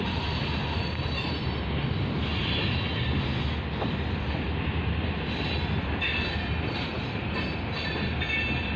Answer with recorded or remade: recorded